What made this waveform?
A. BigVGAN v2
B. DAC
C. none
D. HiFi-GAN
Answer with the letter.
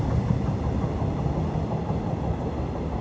C